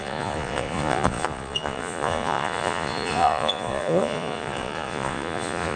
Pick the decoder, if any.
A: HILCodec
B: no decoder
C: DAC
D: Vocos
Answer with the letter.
D